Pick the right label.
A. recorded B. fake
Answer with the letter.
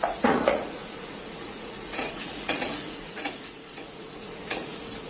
B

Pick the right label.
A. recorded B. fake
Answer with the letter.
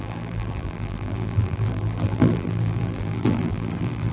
B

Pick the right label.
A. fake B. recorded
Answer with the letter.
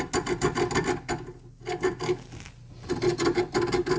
B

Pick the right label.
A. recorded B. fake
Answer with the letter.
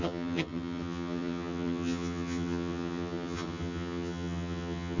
B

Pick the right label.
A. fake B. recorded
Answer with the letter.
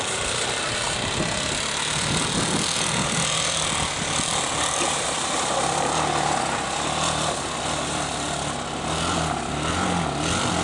B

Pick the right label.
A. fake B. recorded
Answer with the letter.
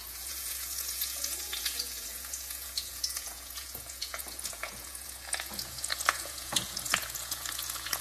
A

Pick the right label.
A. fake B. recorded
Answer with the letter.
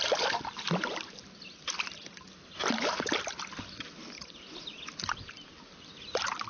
B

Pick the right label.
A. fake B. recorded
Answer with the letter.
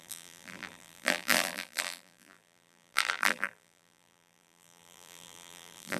A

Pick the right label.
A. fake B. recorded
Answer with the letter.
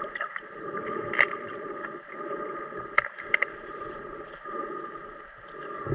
A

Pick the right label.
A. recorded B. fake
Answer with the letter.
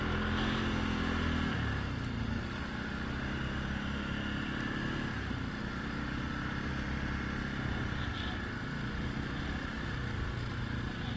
A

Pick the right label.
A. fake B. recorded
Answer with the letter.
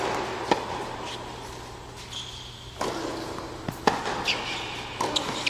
B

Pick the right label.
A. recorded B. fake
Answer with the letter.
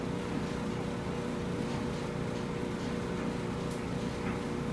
A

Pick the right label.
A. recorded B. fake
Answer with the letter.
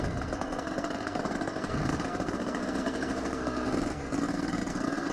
B